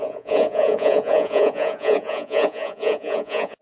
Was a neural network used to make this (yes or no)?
yes